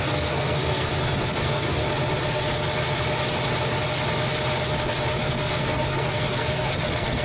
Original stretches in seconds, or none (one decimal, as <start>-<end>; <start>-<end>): 0.9-1.4; 1.8-5.2